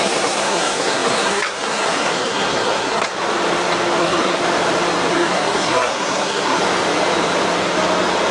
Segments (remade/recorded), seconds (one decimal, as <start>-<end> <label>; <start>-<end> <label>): 0.0-3.1 remade; 3.1-4.0 recorded; 4.0-4.4 remade; 4.4-5.1 recorded; 5.1-6.6 remade; 6.6-8.3 recorded